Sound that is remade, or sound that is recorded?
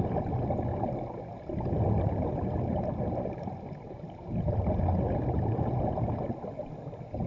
recorded